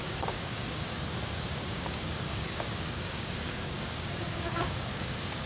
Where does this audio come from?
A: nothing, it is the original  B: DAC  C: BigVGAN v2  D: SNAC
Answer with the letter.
B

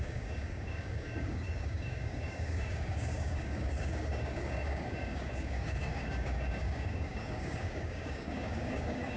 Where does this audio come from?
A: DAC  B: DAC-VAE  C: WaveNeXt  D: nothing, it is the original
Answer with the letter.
A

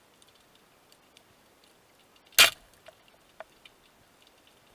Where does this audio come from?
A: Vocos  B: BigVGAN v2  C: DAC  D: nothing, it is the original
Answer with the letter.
D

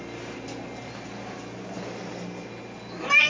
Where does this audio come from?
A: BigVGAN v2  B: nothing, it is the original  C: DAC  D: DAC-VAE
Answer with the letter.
B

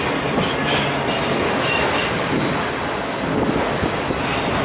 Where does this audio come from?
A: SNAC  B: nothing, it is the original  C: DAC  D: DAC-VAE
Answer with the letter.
B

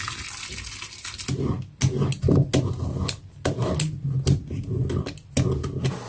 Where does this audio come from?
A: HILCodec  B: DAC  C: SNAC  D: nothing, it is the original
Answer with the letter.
D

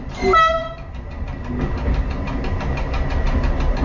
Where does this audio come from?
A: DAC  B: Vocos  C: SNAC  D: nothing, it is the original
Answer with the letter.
D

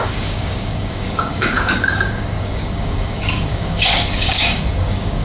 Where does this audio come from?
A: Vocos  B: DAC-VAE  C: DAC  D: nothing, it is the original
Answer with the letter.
C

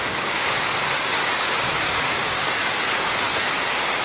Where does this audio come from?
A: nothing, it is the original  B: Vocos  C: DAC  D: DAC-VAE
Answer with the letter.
C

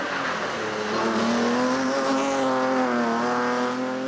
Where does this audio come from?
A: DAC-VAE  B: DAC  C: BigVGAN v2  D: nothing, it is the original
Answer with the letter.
D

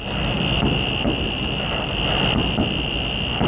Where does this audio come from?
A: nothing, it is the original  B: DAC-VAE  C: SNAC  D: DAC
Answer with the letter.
A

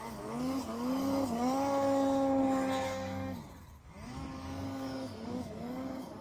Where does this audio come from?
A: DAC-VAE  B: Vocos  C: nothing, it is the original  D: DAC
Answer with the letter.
D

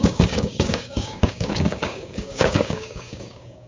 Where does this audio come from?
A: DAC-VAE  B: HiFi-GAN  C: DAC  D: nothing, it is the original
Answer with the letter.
C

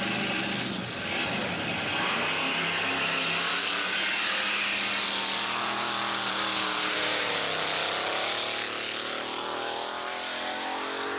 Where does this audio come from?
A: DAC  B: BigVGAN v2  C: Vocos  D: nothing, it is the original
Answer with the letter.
D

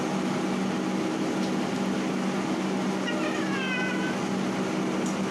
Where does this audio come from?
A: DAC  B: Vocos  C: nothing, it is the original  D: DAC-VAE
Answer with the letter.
C